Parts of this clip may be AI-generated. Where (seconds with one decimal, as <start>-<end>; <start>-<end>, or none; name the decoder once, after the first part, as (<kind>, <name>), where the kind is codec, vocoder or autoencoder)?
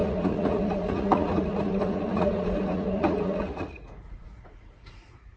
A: 0.0-5.4 (vocoder, Vocos)